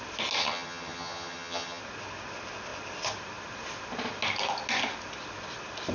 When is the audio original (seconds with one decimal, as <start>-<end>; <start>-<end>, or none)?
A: 0.0-0.4; 1.8-5.9